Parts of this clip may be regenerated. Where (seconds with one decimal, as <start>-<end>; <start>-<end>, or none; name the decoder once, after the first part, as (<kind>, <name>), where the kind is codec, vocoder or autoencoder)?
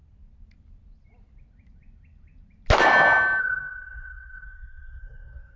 3.4-5.6 (codec, SNAC)